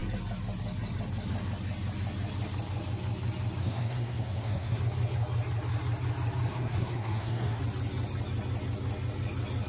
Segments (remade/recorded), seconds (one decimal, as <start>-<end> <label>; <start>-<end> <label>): 0.0-3.6 recorded; 3.6-4.8 remade; 4.8-6.5 recorded; 6.5-7.6 remade; 7.6-9.7 recorded